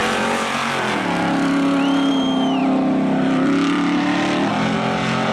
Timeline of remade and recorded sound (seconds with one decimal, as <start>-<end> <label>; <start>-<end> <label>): 0.0-2.1 remade; 2.1-2.6 recorded; 2.6-4.5 remade; 4.5-5.3 recorded